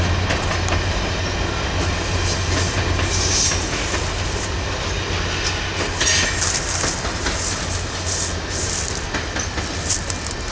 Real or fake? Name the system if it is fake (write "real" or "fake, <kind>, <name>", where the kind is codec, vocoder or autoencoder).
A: real